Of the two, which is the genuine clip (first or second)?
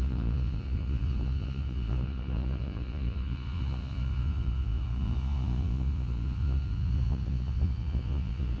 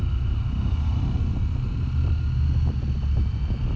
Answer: second